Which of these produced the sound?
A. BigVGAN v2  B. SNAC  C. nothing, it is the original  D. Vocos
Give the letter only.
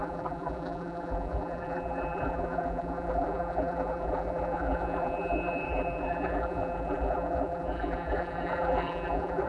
A